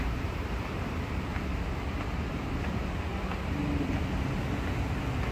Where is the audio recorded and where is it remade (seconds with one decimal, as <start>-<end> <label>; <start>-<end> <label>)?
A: 0.0-1.3 remade; 1.3-2.3 recorded; 2.3-3.1 remade; 3.1-5.3 recorded